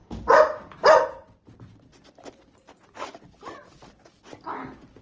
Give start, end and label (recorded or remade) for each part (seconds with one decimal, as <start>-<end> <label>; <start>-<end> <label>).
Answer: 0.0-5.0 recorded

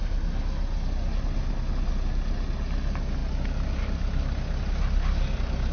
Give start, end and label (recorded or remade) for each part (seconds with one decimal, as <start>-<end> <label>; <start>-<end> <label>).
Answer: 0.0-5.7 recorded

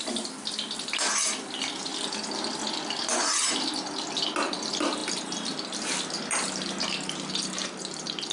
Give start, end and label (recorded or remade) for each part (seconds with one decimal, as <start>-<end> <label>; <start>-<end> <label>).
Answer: 0.0-8.3 recorded

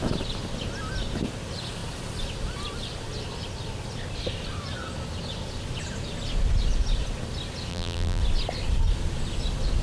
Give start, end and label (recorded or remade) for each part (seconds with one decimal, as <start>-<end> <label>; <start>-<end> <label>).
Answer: 0.0-7.7 recorded; 7.7-8.2 remade; 8.2-9.8 recorded